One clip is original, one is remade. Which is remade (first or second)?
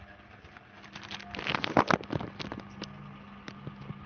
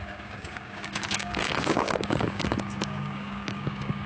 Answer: second